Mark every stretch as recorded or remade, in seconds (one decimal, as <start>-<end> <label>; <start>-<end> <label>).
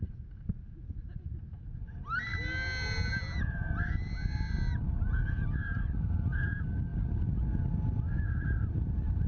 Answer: 0.0-9.3 recorded